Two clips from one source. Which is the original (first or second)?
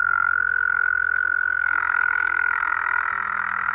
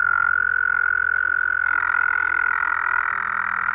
second